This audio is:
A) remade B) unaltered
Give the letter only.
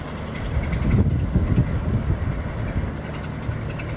B